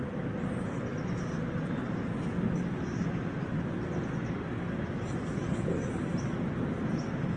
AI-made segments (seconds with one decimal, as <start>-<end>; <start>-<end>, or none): none